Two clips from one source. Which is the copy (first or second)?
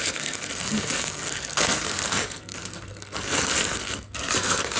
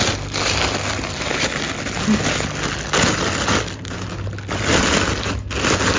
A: first